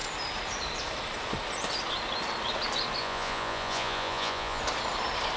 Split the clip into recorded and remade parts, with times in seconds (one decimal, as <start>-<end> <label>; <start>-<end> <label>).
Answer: 0.0-3.0 recorded; 3.0-4.6 remade; 4.6-5.4 recorded